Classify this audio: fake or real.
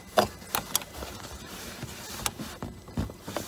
real